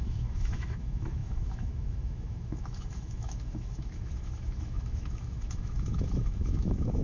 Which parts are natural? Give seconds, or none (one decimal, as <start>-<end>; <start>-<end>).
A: none